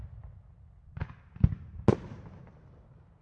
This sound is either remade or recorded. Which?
recorded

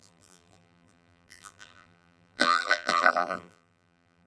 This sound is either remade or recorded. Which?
remade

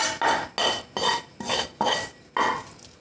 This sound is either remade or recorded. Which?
recorded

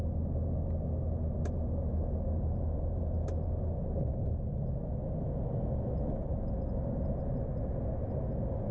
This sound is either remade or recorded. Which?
recorded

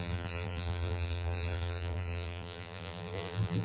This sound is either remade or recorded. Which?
remade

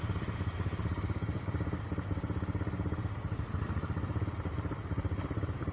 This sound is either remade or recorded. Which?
remade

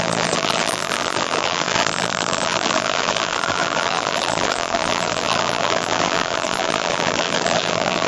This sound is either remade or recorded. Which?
remade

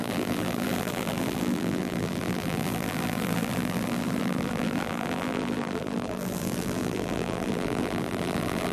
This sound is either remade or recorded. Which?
remade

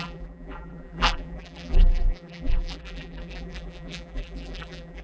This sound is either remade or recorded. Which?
remade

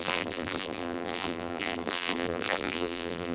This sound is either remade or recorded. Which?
remade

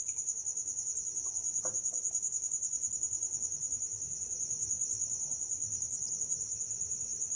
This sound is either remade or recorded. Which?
recorded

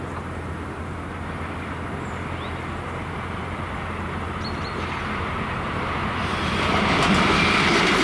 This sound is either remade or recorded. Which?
recorded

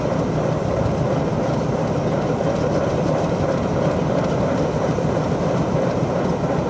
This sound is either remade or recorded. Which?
recorded